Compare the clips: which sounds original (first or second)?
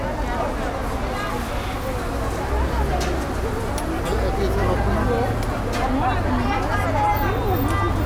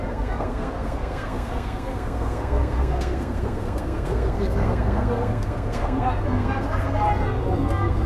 first